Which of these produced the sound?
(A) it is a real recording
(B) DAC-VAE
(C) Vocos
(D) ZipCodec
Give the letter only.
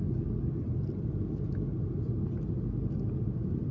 A